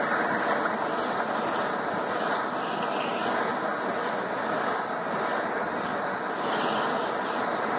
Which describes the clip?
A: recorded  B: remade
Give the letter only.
A